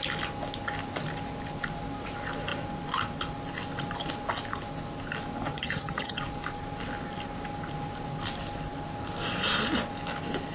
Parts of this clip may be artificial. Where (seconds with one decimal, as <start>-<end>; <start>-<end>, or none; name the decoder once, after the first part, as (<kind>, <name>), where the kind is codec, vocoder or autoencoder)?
5.5-6.2 (vocoder, HiFi-GAN)